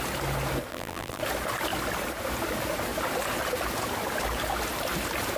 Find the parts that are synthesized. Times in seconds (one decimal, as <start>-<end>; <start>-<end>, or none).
0.7-1.2